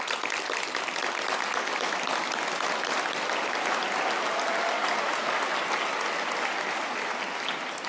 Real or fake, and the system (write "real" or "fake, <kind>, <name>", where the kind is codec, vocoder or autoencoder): real